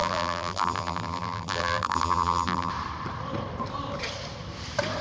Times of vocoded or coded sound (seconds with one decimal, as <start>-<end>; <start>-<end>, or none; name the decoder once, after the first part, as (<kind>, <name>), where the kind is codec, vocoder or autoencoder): 0.0-2.7 (vocoder, BigVGAN v2)